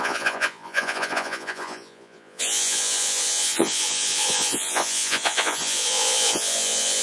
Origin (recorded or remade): remade